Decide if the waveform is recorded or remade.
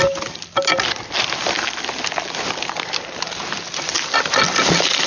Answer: recorded